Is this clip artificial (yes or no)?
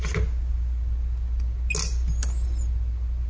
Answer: no